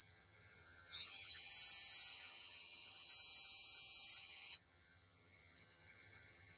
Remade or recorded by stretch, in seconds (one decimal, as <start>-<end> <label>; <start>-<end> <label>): 0.0-1.5 remade; 1.5-2.1 recorded; 2.1-3.1 remade; 3.1-4.2 recorded; 4.2-6.6 remade